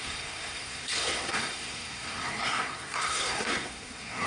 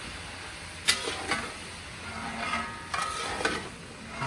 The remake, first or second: first